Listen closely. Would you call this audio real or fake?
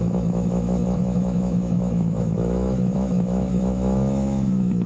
fake